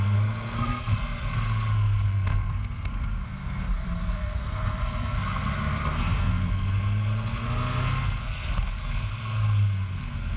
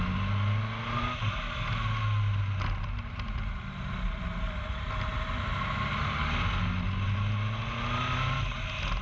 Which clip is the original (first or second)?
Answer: second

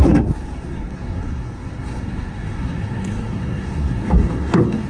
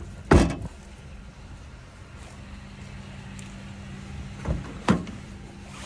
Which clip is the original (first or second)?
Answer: second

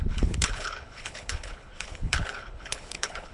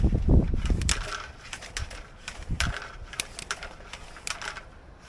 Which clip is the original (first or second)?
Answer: second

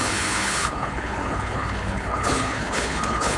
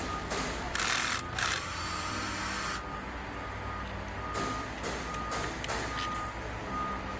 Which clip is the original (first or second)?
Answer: second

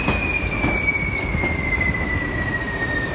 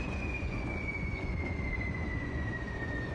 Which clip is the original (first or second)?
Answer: first